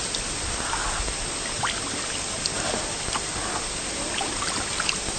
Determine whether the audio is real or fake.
real